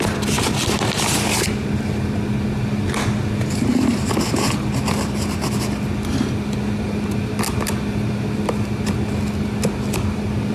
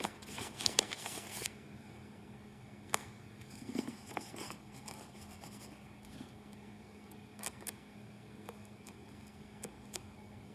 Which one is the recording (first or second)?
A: first